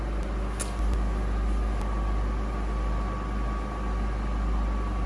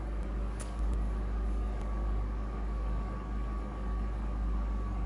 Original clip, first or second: first